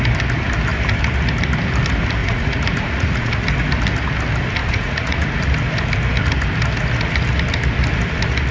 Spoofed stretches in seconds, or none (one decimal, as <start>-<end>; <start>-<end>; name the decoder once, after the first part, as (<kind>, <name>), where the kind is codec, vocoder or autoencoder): 2.2-3.3 (vocoder, Vocos); 4.6-5.4